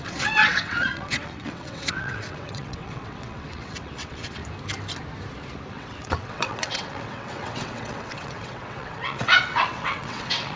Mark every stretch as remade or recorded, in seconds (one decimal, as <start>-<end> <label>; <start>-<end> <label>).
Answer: 0.0-4.4 remade; 4.4-5.7 recorded; 5.7-10.6 remade